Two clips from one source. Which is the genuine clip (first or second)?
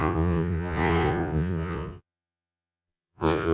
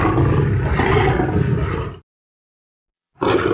second